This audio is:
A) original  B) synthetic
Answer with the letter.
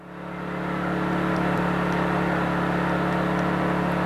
A